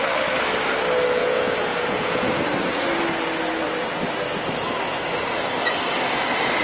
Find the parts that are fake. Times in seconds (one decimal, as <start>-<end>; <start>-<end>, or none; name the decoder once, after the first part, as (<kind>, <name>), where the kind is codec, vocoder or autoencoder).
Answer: 1.2-2.4 (vocoder, Vocos)